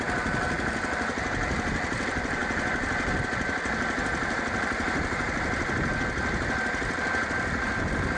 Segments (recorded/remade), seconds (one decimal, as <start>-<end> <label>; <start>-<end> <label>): 0.0-8.2 recorded